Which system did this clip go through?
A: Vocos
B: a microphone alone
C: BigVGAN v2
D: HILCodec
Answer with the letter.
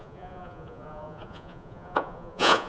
A